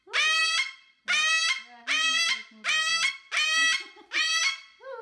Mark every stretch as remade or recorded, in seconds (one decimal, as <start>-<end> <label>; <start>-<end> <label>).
0.0-5.0 recorded